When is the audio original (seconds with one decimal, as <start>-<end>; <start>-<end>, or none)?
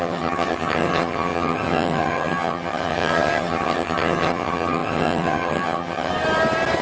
6.1-6.8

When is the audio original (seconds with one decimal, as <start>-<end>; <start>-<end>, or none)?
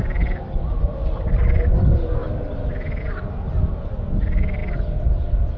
0.0-5.6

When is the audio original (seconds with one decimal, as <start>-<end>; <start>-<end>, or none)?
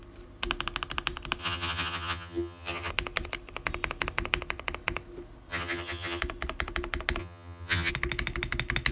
0.0-1.4; 2.9-5.5; 6.2-7.2; 7.9-8.9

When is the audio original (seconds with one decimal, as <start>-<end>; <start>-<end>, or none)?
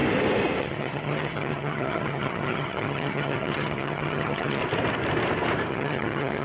0.0-0.6; 4.6-5.7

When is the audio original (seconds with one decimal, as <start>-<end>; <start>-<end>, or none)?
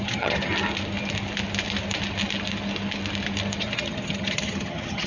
0.5-3.6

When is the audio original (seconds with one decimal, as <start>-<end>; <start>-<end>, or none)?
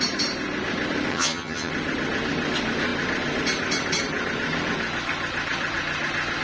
0.0-1.1; 1.7-6.4